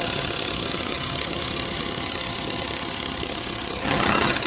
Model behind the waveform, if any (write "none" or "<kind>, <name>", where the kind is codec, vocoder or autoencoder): vocoder, HiFi-GAN